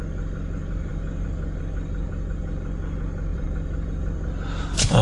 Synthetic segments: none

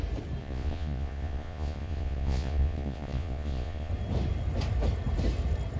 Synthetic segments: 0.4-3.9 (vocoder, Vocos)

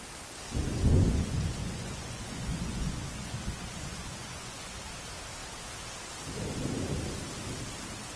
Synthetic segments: 0.7-4.7 (vocoder, Vocos)